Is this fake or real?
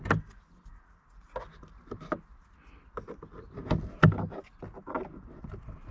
real